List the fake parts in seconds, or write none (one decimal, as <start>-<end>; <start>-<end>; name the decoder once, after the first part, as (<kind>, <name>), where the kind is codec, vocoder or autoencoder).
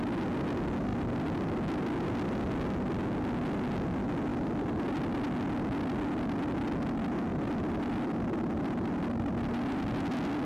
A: 4.3-4.9 (vocoder, BigVGAN v2); 7.3-10.0